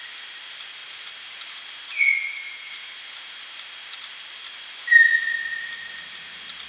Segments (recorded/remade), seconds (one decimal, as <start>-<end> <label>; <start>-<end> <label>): 0.0-0.8 recorded; 0.8-1.5 remade; 1.5-6.7 recorded